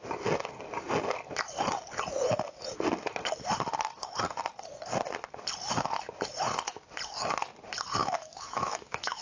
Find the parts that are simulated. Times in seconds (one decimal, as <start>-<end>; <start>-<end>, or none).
8.0-9.2